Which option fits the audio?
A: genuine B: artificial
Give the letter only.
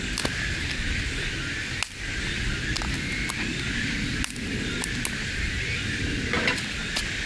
A